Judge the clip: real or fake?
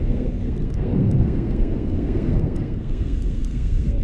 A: fake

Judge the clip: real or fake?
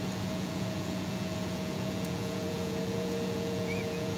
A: fake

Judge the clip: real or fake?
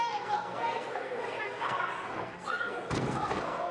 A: fake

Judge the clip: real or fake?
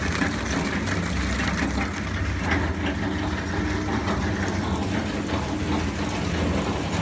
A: real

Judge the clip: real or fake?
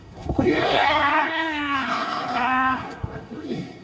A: fake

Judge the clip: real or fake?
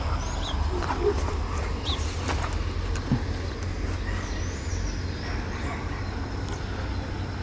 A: real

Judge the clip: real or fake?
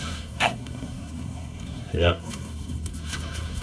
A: fake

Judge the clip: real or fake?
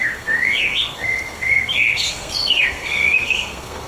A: fake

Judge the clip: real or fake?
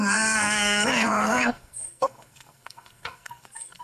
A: fake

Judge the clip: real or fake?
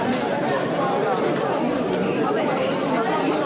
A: fake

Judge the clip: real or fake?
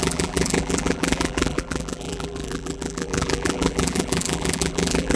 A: fake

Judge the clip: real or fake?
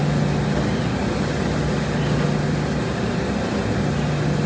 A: real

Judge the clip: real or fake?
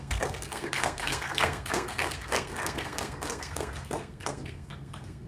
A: fake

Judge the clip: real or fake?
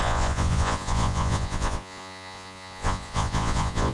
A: fake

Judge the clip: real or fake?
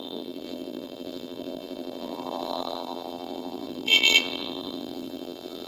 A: fake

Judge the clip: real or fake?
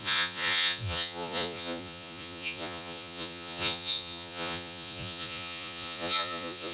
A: fake